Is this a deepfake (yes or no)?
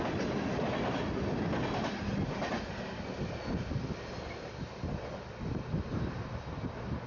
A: no